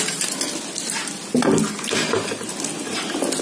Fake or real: real